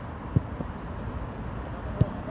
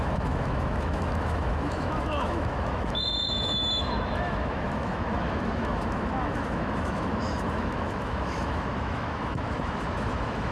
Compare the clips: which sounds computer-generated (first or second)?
second